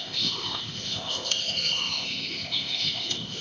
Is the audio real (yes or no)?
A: no